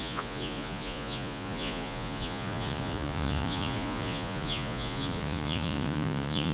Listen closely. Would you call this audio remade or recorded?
remade